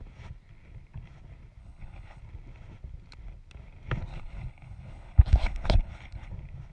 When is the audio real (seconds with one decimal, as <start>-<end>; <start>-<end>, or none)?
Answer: 0.0-1.6; 2.2-4.1; 6.3-6.7